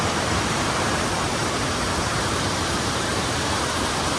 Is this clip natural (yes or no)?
no